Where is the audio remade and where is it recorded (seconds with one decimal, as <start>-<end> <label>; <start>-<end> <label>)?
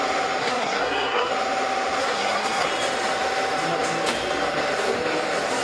0.0-0.4 recorded; 0.4-1.3 remade; 1.3-2.0 recorded; 2.0-2.7 remade; 2.7-5.6 recorded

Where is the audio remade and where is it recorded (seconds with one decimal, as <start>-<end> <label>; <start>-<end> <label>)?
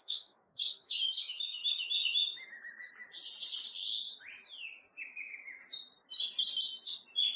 0.0-2.7 remade; 2.7-7.4 recorded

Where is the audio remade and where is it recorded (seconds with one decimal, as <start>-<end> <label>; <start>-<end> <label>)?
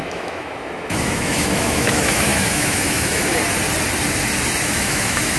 0.0-3.4 remade; 3.4-4.6 recorded; 4.6-5.4 remade